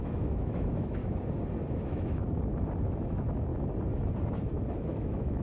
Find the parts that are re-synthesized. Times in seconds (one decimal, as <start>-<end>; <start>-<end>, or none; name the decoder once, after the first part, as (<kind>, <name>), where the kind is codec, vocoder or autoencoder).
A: 0.0-1.0 (autoencoder, DAC-VAE); 1.7-2.2; 2.8-3.5; 4.7-5.4